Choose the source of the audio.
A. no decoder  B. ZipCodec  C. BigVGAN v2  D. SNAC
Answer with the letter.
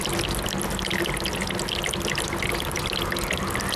A